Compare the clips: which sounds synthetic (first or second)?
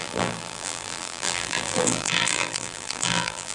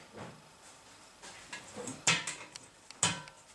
first